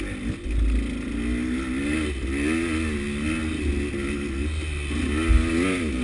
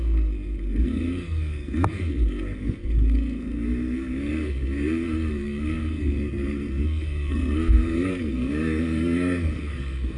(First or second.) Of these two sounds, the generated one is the second